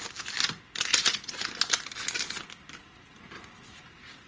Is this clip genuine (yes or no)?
yes